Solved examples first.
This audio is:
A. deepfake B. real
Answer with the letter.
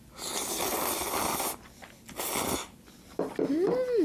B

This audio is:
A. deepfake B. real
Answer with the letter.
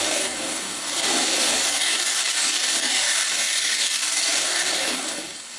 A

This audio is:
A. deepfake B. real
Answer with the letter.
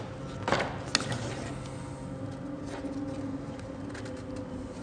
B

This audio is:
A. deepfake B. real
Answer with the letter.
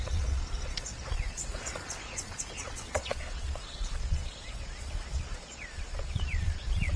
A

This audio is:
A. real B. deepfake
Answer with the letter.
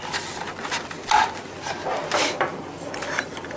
A